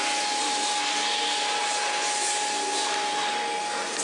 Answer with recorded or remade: recorded